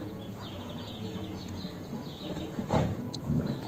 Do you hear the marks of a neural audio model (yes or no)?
yes